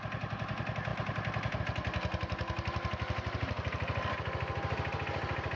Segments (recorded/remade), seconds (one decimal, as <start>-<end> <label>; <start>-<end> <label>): 0.0-5.6 recorded